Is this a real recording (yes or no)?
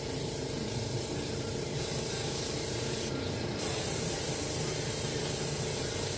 no